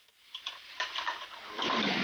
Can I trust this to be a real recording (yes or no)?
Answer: no